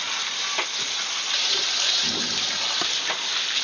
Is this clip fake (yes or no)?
no